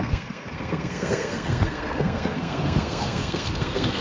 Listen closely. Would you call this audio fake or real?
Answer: fake